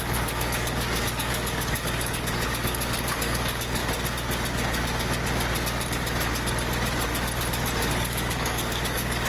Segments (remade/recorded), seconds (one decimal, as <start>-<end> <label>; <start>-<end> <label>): 0.0-3.8 remade; 3.8-7.9 recorded; 7.9-9.3 remade